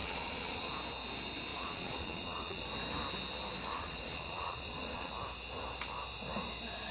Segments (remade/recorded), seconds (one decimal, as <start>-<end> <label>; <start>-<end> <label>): 0.0-0.7 remade; 0.7-1.5 recorded; 1.5-2.6 remade; 2.6-3.7 recorded; 3.7-5.1 remade; 5.1-6.9 recorded